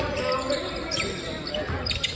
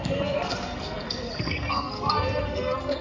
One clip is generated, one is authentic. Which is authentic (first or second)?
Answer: first